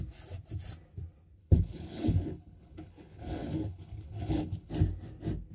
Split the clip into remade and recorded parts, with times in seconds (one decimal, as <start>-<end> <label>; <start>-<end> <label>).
0.0-1.4 recorded; 1.4-4.7 remade; 4.7-5.5 recorded